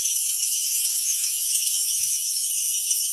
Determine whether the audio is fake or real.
fake